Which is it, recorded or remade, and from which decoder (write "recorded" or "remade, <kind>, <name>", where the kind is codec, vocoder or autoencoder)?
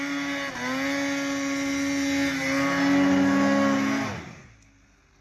recorded